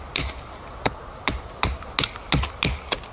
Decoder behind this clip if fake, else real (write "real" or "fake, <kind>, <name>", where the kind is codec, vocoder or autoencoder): real